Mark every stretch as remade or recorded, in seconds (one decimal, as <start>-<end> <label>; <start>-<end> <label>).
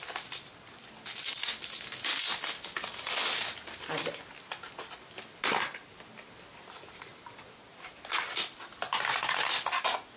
0.0-10.2 recorded